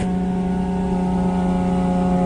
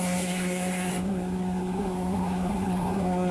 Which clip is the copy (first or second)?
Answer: second